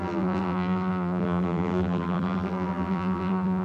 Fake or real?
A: fake